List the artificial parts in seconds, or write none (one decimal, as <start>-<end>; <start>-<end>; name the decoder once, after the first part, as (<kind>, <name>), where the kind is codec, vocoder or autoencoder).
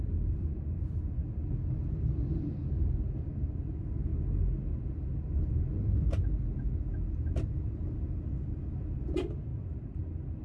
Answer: none